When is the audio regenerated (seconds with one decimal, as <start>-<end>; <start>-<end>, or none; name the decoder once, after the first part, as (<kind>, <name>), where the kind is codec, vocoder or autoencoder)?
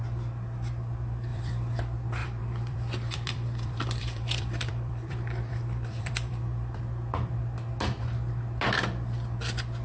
1.3-1.8 (vocoder, BigVGAN v2); 2.2-6.8